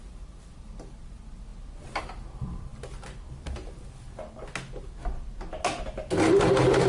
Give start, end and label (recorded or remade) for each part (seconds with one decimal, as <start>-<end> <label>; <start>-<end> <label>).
0.0-6.9 recorded